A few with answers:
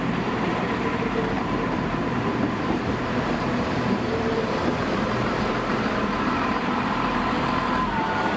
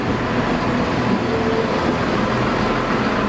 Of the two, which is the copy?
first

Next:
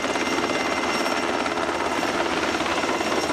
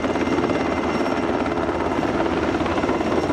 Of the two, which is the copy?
second